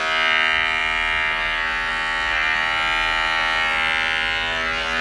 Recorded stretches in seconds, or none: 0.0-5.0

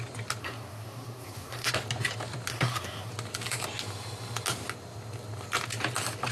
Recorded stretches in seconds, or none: 0.0-0.4; 1.7-2.5; 3.1-6.3

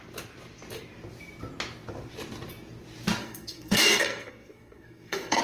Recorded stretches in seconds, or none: 0.0-3.2